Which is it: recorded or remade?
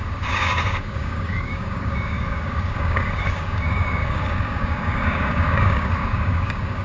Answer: remade